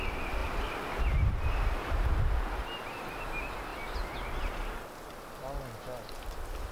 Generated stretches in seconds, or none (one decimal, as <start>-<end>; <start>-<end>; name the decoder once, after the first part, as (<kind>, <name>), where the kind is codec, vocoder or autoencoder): 0.4-2.2 (vocoder, BigVGAN v2)